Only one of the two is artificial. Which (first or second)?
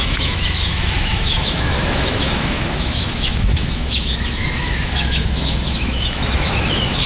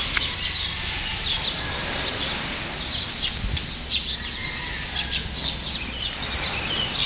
first